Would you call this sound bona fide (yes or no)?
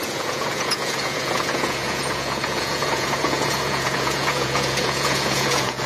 no